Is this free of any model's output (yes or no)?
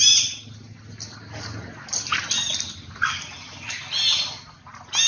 yes